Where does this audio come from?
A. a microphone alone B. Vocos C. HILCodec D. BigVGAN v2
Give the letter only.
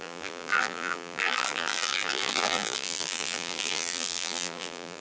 D